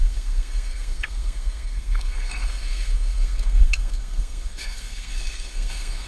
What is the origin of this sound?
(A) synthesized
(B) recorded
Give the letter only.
A